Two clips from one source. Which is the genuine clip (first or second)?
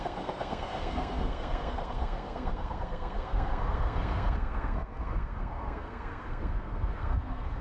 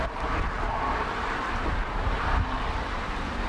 second